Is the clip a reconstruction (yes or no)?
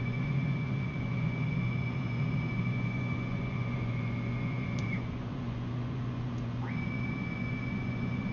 yes